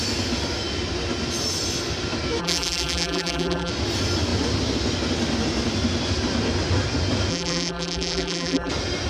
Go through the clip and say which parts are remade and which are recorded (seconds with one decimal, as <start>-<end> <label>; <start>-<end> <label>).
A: 0.0-2.4 recorded; 2.4-3.7 remade; 3.7-7.3 recorded; 7.3-8.7 remade; 8.7-9.1 recorded